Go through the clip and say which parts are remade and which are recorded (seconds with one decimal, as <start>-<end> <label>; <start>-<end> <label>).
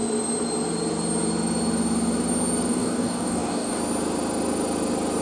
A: 0.0-2.7 recorded; 2.7-3.8 remade; 3.8-5.2 recorded